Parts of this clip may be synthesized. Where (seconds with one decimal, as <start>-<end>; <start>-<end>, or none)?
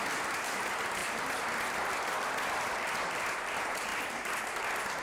1.0-2.8; 3.9-4.6